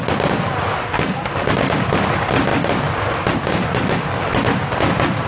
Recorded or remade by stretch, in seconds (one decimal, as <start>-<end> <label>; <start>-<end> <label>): 0.0-5.3 recorded